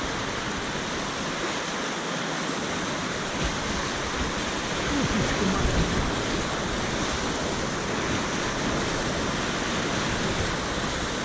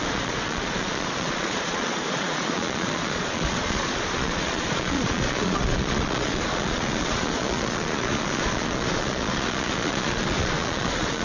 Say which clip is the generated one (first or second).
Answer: second